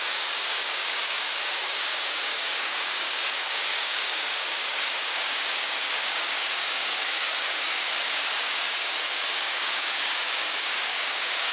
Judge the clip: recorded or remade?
remade